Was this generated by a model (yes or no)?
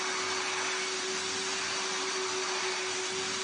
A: no